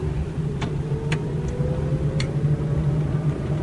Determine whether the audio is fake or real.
real